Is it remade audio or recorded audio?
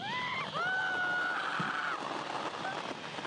recorded